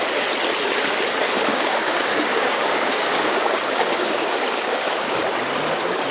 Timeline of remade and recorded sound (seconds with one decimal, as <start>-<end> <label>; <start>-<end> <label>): 0.0-1.5 recorded; 1.5-5.2 remade; 5.2-6.1 recorded